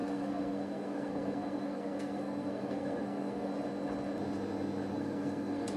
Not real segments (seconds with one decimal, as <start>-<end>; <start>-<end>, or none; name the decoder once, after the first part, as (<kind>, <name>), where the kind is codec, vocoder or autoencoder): 0.0-3.5 (codec, SNAC); 4.9-5.8